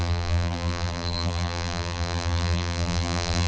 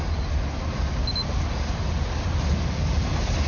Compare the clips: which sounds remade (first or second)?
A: first